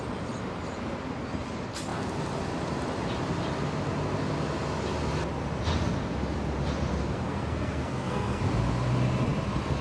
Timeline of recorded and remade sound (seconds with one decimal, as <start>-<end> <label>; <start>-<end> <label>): 0.0-6.9 recorded; 6.9-8.4 remade; 8.4-9.8 recorded